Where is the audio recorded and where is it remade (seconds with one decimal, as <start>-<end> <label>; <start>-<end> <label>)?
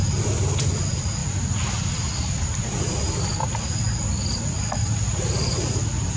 0.0-6.2 recorded